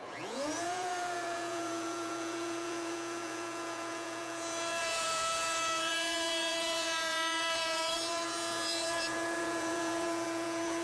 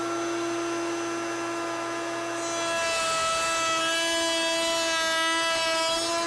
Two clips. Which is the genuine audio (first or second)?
second